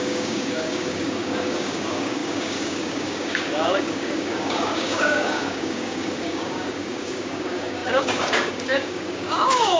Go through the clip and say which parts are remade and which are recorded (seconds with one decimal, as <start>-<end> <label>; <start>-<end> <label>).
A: 0.0-9.8 remade